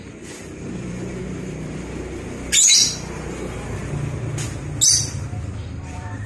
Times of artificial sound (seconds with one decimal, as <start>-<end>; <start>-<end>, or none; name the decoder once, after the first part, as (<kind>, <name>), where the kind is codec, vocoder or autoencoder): 0.0-1.2 (vocoder, BigVGAN v2); 5.0-6.3